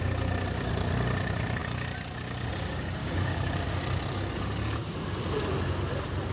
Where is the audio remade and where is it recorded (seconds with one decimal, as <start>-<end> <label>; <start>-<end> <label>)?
0.0-3.0 recorded; 3.0-3.6 remade; 3.6-6.3 recorded